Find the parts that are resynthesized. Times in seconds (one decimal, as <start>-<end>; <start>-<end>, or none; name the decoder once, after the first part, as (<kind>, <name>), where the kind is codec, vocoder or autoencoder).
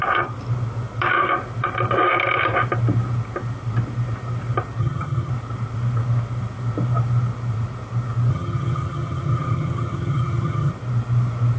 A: 4.8-5.3 (vocoder, HiFi-GAN); 8.3-10.7